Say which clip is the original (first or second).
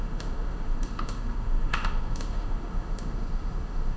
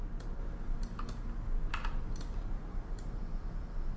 second